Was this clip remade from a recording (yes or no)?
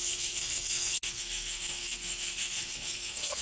yes